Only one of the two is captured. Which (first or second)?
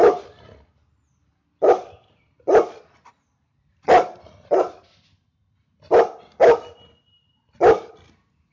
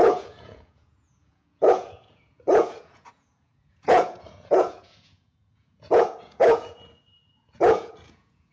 first